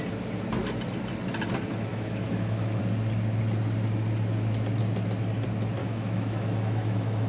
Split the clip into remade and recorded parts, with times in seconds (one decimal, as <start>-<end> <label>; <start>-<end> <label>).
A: 0.0-1.9 recorded; 1.9-2.8 remade; 2.8-5.8 recorded; 5.8-7.3 remade